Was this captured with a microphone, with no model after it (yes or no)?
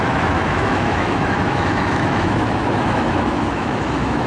no